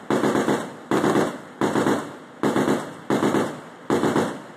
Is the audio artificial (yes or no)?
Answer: no